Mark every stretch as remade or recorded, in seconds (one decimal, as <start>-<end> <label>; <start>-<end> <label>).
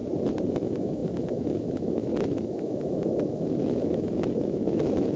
0.0-0.5 recorded; 0.5-5.2 remade